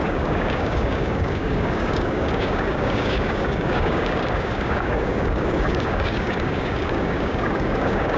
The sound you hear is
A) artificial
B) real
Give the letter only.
A